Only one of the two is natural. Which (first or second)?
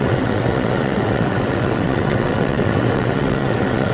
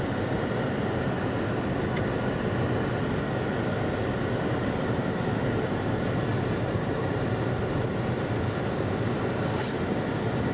second